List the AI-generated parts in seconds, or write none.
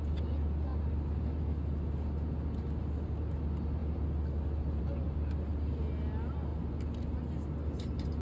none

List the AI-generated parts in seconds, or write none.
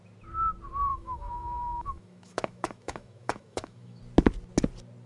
0.9-4.0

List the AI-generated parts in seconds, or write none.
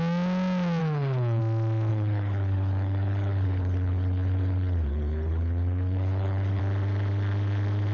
0.8-1.4; 1.9-6.6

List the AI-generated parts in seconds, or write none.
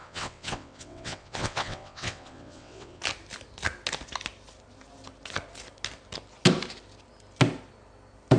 0.0-3.0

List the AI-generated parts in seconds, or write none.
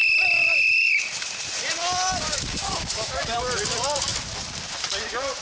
0.0-5.4